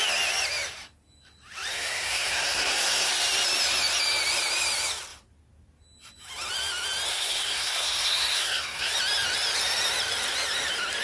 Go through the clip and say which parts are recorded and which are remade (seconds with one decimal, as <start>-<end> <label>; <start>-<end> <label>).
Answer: 0.0-1.7 recorded; 1.7-3.1 remade; 3.1-7.1 recorded; 7.1-8.9 remade; 8.9-11.0 recorded